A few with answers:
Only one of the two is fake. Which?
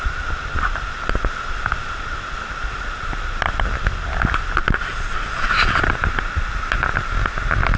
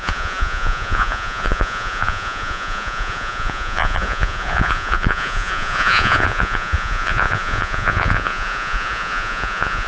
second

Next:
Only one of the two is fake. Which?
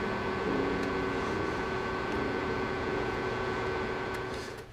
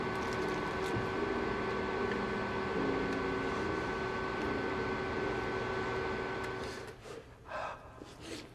first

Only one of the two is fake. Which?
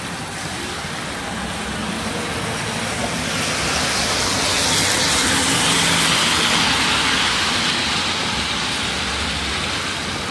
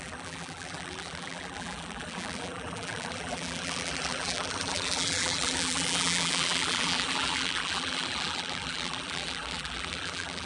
second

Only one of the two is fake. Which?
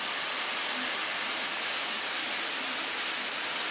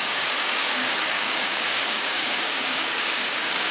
second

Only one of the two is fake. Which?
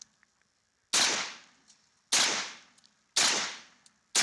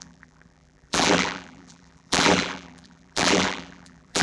second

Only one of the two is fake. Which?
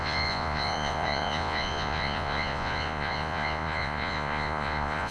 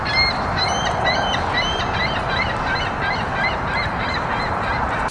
first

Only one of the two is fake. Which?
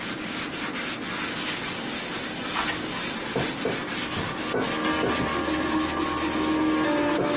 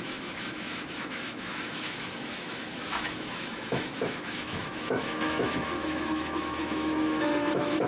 second